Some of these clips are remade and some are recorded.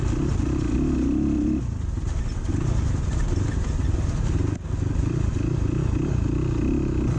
recorded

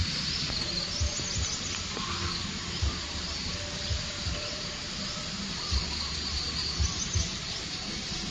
recorded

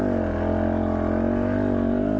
recorded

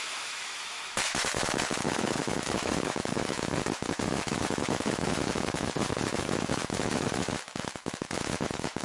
remade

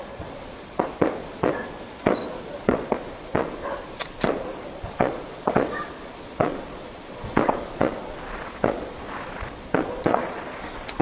remade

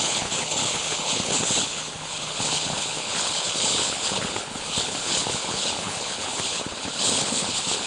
remade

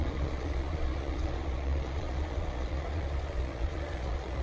remade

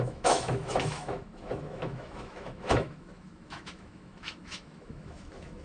remade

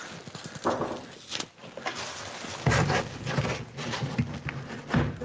recorded